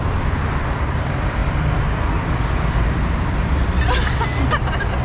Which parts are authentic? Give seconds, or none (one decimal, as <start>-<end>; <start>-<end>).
0.0-5.0